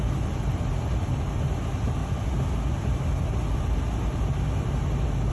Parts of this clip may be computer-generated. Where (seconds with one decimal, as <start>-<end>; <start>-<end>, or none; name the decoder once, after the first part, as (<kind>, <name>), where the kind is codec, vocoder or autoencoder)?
0.0-2.0 (vocoder, BigVGAN v2)